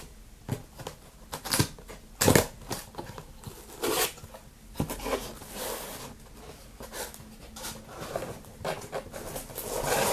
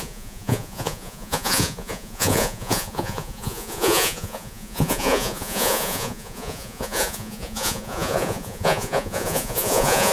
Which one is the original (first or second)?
first